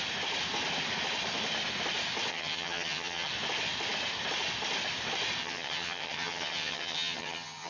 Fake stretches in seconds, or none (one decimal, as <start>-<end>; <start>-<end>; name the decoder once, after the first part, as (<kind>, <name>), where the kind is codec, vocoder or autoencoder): 2.3-3.3 (vocoder, HiFi-GAN); 5.4-7.7